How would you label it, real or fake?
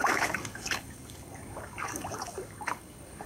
fake